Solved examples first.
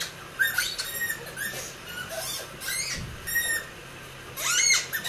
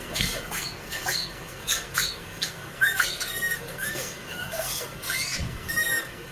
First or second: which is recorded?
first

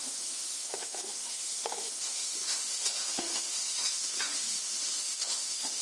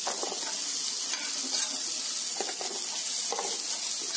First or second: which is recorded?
second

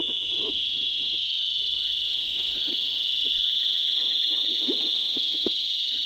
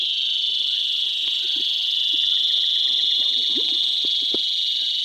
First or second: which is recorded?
second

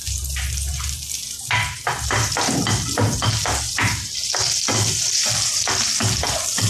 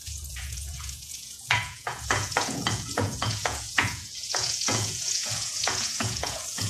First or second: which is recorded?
first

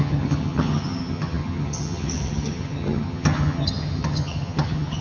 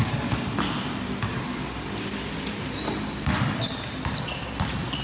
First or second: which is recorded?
second